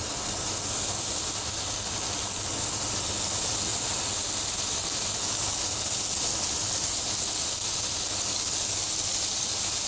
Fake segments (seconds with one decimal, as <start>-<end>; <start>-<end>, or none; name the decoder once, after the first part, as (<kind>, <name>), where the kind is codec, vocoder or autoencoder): none